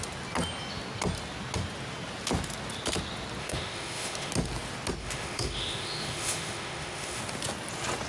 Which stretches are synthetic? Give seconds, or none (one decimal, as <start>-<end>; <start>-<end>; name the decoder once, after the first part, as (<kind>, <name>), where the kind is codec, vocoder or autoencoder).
3.4-4.3 (autoencoder, DAC-VAE); 5.0-7.2

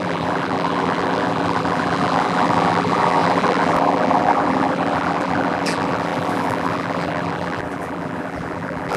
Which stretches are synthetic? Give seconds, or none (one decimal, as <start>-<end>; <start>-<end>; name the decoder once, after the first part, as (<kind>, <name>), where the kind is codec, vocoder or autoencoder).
0.0-9.0 (vocoder, BigVGAN v2)

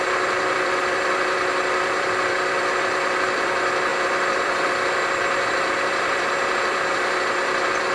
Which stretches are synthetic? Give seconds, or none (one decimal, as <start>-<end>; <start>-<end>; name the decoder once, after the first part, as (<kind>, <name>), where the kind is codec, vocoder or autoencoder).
0.0-7.9 (vocoder, BigVGAN v2)

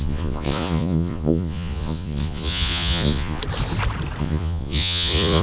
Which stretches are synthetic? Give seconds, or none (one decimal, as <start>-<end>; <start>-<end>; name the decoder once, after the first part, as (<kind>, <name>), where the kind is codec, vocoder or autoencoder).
0.0-3.4 (vocoder, Vocos); 4.2-5.4

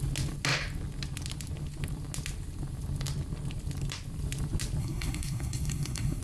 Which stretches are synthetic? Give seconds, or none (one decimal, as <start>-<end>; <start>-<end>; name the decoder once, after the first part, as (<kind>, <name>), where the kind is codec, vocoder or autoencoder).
4.8-6.2 (codec, SNAC)